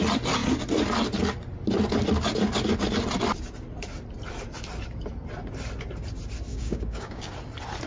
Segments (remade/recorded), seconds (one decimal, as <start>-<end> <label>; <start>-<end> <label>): 0.0-6.5 recorded; 6.5-7.3 remade; 7.3-7.9 recorded